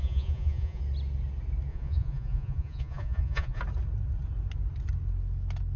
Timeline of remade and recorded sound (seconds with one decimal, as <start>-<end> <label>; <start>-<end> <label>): 0.0-0.8 remade; 0.8-1.7 recorded; 1.7-3.6 remade; 3.6-5.8 recorded